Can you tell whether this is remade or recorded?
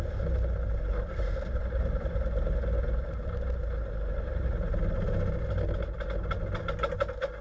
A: recorded